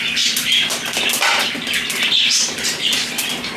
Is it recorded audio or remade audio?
remade